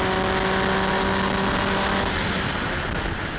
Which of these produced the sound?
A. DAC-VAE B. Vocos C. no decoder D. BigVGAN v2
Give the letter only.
C